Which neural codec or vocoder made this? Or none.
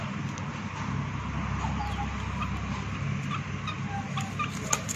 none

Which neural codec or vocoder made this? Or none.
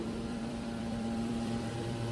vocoder, BigVGAN v2